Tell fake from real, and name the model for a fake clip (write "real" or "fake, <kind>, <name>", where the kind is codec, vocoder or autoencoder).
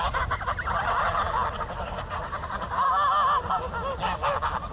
real